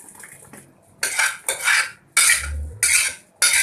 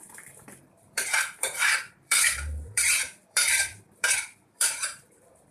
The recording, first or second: first